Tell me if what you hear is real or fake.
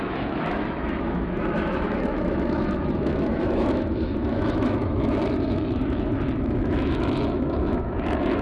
fake